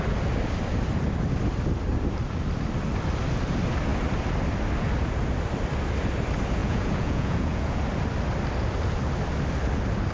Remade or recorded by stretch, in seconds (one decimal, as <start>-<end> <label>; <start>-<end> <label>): 0.0-6.6 recorded; 6.6-7.8 remade; 7.8-10.1 recorded